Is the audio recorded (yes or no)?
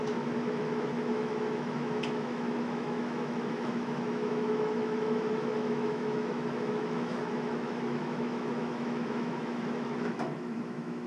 no